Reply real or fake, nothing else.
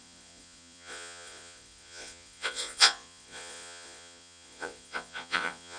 fake